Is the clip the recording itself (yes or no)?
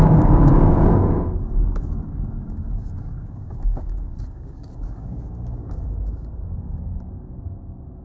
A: no